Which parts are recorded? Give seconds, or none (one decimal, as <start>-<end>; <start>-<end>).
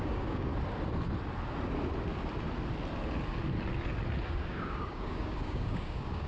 0.5-4.3